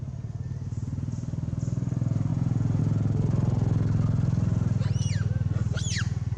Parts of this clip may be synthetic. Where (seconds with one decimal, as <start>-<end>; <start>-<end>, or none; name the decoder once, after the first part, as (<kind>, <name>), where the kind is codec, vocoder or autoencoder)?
2.3-2.8 (vocoder, Vocos)